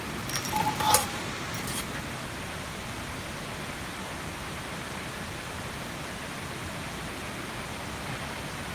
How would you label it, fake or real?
real